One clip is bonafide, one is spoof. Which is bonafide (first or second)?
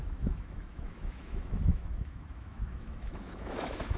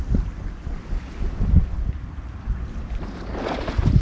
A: second